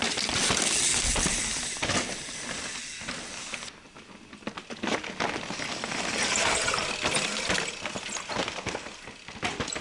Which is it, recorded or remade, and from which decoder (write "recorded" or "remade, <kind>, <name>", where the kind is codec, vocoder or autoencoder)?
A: recorded